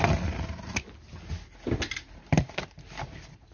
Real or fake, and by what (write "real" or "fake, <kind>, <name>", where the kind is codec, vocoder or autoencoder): real